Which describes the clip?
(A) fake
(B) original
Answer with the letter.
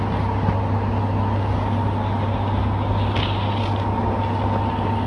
B